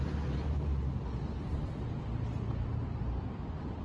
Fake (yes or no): no